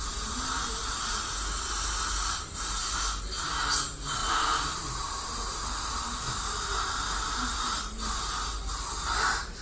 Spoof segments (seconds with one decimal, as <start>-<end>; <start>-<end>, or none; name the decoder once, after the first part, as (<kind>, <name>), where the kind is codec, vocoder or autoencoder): 0.0-2.8 (vocoder, BigVGAN v2); 3.5-9.6